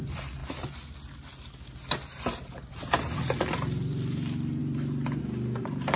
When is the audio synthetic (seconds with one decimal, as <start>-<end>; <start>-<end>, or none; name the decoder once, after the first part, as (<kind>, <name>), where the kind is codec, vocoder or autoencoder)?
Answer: 0.0-0.4 (vocoder, BigVGAN v2); 2.1-6.0